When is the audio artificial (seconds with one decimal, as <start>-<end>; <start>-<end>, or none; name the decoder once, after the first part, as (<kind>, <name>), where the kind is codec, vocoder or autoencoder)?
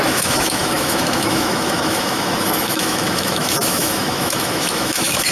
0.0-5.3 (autoencoder, DAC-VAE)